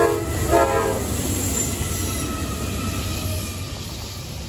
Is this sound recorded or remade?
recorded